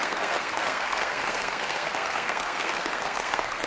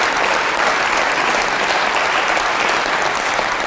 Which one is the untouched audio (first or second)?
second